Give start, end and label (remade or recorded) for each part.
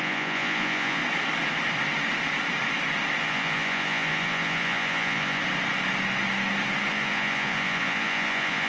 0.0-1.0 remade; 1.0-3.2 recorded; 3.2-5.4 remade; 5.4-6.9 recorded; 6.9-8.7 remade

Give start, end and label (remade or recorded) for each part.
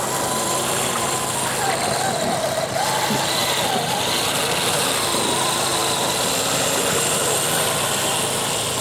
0.0-8.8 recorded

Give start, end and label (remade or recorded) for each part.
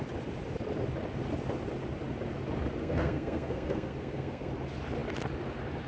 0.0-2.8 recorded; 2.8-4.5 remade; 4.5-5.9 recorded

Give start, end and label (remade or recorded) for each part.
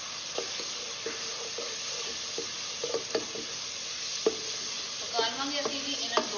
0.0-6.4 recorded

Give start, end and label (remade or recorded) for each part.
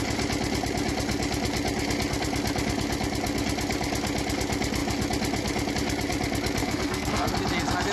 0.0-6.6 recorded; 6.6-7.3 remade; 7.3-7.9 recorded